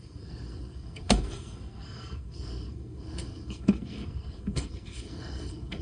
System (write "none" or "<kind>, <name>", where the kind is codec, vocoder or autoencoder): codec, SNAC